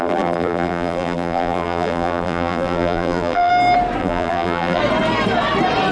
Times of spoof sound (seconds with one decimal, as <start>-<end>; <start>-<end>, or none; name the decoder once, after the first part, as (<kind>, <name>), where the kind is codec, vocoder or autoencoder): 0.0-3.5 (vocoder, BigVGAN v2); 4.0-4.8